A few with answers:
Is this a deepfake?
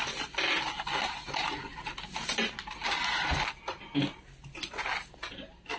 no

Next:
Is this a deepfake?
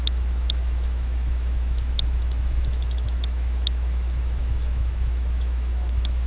yes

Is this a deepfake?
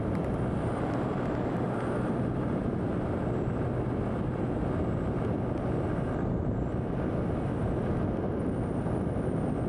no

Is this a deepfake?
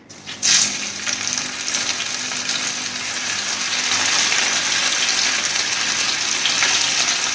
no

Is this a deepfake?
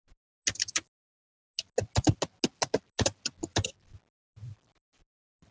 no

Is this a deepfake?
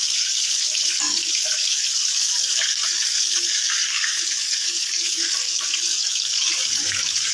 yes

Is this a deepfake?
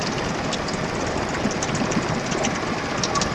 no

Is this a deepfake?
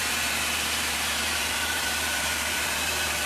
yes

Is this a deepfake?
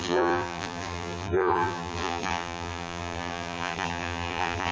yes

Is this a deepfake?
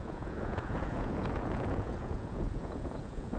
yes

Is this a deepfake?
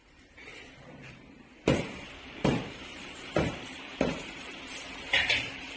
yes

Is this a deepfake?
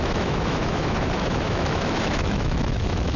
yes